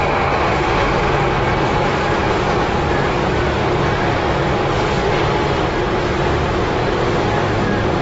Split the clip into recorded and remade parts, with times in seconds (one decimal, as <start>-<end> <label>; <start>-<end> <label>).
0.0-0.4 recorded; 0.4-0.9 remade; 0.9-8.0 recorded